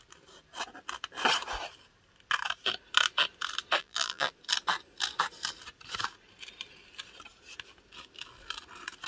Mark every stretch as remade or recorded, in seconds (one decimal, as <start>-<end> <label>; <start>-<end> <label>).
0.0-3.8 recorded; 3.8-4.3 remade; 4.3-9.1 recorded